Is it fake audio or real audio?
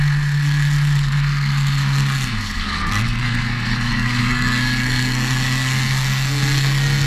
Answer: fake